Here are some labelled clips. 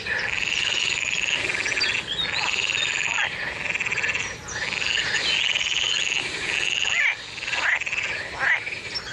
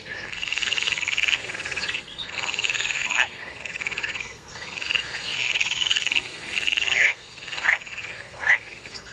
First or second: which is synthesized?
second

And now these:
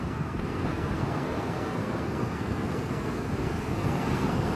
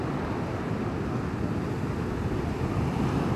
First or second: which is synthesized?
first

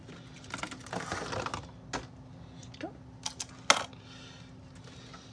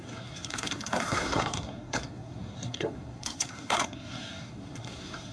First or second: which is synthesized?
second